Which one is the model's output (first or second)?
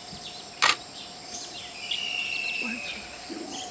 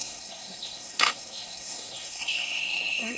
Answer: second